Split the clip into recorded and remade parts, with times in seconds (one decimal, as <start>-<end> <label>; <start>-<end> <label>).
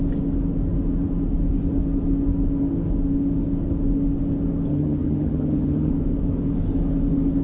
0.0-4.7 recorded; 4.7-5.9 remade; 5.9-7.4 recorded